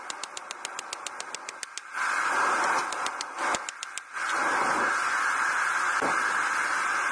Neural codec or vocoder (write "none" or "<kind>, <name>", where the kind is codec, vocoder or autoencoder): none